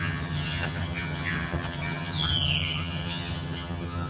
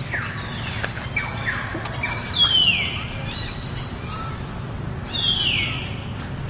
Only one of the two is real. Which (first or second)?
second